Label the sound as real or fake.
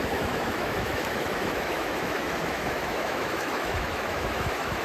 fake